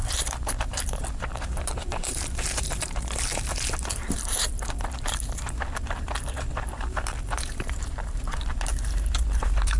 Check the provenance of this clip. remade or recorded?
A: remade